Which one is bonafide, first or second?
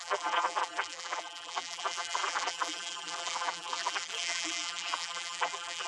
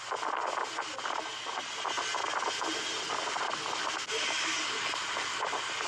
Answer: second